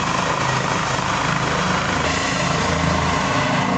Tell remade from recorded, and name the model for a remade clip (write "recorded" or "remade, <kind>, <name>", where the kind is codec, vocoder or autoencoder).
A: recorded